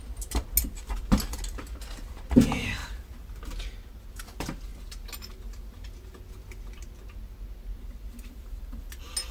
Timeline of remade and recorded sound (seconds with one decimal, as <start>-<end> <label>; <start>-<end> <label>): 0.0-2.8 recorded; 2.8-3.4 remade; 3.4-8.1 recorded; 8.1-8.8 remade; 8.8-9.3 recorded